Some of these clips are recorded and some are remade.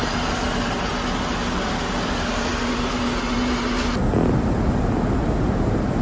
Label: recorded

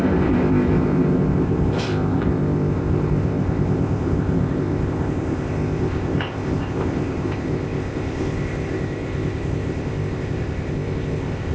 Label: remade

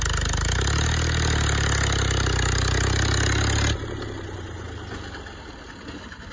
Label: recorded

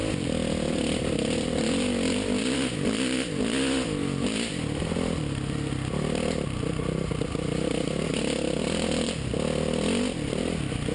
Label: recorded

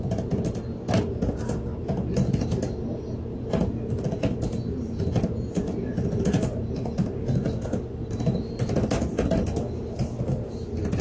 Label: recorded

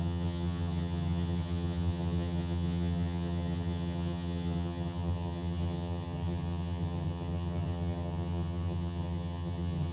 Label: remade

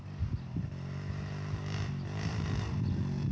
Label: remade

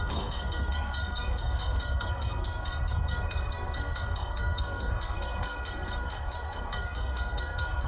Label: remade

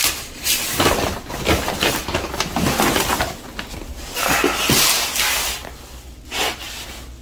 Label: recorded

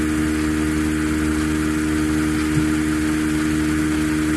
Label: recorded